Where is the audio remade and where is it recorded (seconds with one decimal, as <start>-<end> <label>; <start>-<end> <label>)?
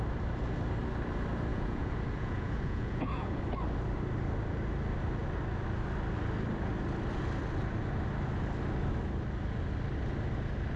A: 0.0-1.5 recorded; 1.5-3.4 remade; 3.4-10.8 recorded